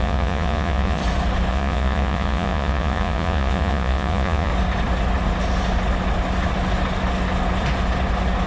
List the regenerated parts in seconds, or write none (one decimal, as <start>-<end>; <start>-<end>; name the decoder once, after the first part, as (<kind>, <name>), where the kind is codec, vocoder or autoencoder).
0.0-1.0 (vocoder, Vocos); 1.5-4.5